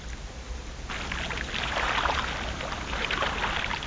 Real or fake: real